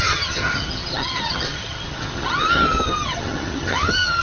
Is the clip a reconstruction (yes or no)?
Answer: yes